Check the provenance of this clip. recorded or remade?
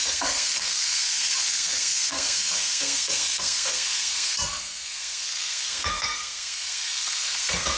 remade